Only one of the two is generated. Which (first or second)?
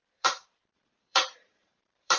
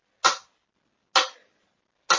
first